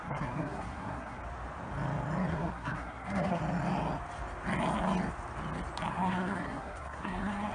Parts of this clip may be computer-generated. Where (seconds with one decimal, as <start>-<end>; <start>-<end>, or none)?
0.0-1.2; 2.3-3.4; 5.9-7.5